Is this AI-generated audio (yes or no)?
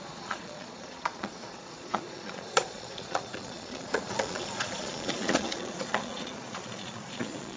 yes